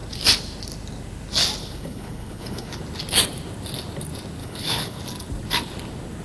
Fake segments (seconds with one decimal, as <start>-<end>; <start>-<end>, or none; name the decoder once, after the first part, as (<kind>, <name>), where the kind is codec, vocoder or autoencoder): 1.6-2.8 (codec, HILCodec); 4.4-5.0